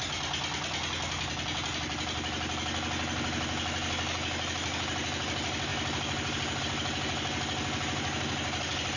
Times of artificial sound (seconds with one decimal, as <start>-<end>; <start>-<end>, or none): none